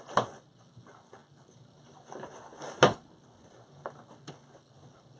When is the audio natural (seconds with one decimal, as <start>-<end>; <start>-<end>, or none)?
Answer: 0.0-5.2